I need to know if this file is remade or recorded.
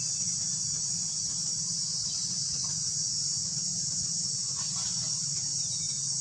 recorded